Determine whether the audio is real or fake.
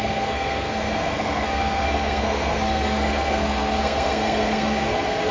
fake